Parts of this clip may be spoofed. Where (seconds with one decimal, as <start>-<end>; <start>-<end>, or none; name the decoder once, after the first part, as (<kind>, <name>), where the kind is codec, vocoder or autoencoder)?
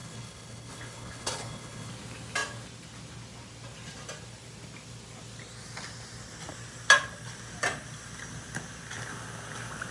0.0-1.9 (codec, HILCodec)